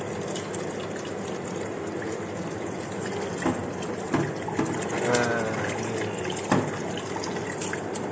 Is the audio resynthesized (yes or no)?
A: no